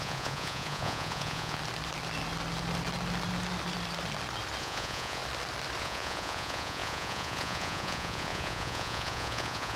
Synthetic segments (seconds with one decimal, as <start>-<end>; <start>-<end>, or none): 0.0-1.6; 4.6-5.2; 5.8-9.8